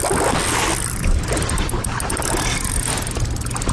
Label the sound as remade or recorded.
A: recorded